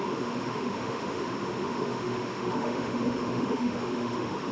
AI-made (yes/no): yes